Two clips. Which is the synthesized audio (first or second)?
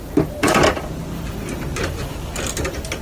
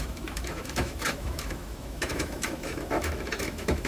second